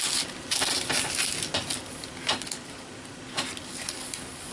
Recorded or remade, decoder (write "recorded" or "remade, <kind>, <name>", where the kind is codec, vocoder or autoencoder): recorded